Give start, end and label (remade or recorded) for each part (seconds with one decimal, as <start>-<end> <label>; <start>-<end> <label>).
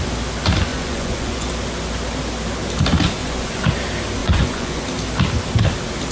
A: 0.0-0.7 recorded; 0.7-1.5 remade; 1.5-3.2 recorded; 3.2-3.7 remade; 3.7-4.2 recorded; 4.2-4.8 remade; 4.8-6.1 recorded